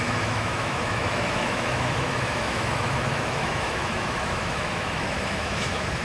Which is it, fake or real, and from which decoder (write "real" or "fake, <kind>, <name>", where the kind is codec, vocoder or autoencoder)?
fake, autoencoder, DAC-VAE